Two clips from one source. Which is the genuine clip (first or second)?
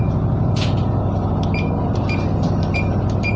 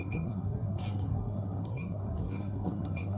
first